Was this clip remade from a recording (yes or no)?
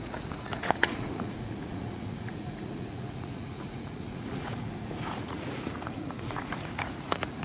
yes